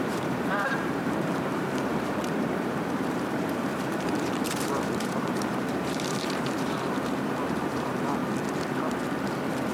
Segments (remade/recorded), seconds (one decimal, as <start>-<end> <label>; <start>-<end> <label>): 0.0-8.2 remade; 8.2-9.7 recorded